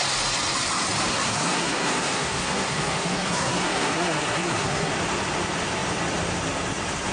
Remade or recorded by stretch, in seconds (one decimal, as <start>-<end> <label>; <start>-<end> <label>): 0.0-1.1 recorded; 1.1-4.9 remade; 4.9-7.1 recorded